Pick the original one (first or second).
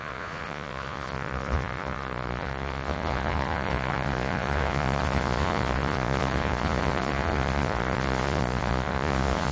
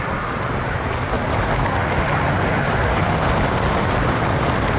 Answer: second